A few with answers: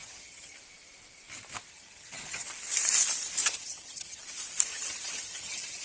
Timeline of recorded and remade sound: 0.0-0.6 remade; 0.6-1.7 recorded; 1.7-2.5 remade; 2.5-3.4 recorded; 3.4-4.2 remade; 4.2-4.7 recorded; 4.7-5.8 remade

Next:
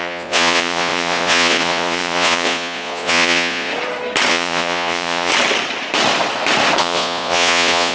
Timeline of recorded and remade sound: 0.0-3.7 remade; 3.7-4.3 recorded; 4.3-5.3 remade; 5.3-6.8 recorded; 6.8-7.9 remade

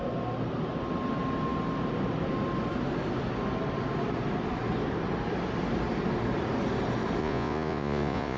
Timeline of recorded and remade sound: 0.0-7.2 recorded; 7.2-8.4 remade

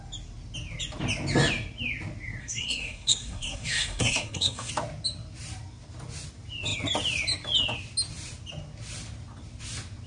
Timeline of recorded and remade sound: 0.0-2.4 recorded; 2.4-4.7 remade; 4.7-10.1 recorded

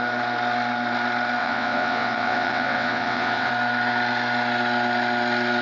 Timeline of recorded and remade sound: 0.0-1.4 recorded; 1.4-3.5 remade; 3.5-5.6 recorded

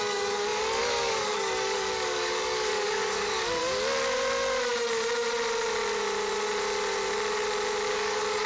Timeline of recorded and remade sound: 0.0-3.6 remade; 3.6-7.9 recorded; 7.9-8.5 remade

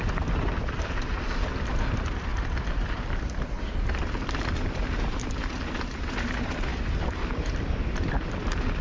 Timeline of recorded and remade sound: 0.0-8.8 recorded

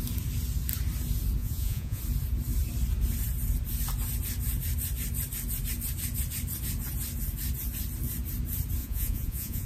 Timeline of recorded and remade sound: 0.0-1.4 recorded; 1.4-2.0 remade; 2.0-8.8 recorded; 8.8-9.7 remade